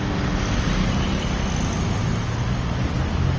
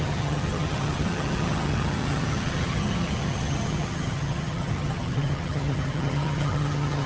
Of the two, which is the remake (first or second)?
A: second